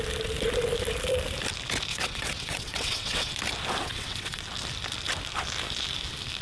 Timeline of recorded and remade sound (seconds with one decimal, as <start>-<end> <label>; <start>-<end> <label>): 0.0-1.9 recorded; 1.9-3.3 remade; 3.3-3.8 recorded; 3.8-4.4 remade; 4.4-6.4 recorded